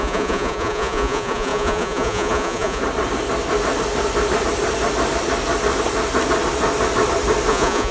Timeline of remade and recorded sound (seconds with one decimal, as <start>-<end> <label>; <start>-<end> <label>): 0.0-2.8 remade; 2.8-7.5 recorded; 7.5-7.9 remade